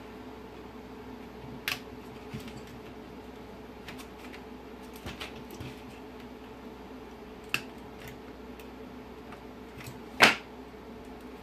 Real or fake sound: real